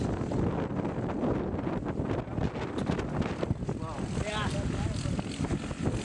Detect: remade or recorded recorded